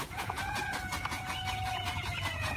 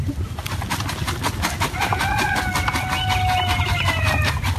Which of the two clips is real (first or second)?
second